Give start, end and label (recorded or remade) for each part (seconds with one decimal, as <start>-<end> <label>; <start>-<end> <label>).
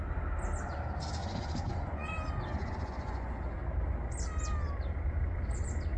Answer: 0.0-1.2 recorded; 1.2-2.1 remade; 2.1-2.6 recorded; 2.6-3.3 remade; 3.3-6.0 recorded